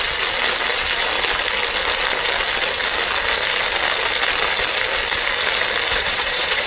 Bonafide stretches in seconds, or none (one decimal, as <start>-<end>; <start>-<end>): 0.0-5.9